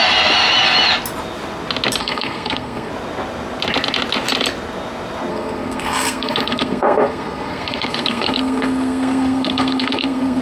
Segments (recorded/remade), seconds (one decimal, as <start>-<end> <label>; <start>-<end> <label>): 0.0-2.0 recorded; 2.0-2.9 remade; 2.9-5.3 recorded; 5.3-10.4 remade